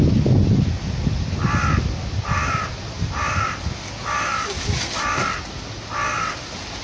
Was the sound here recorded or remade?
recorded